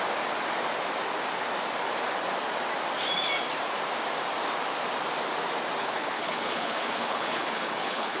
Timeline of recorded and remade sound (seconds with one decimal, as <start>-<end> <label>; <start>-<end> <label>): 0.0-5.8 recorded; 5.8-8.2 remade